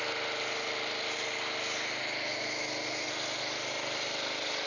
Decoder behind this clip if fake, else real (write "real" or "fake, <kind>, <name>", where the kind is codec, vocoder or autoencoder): real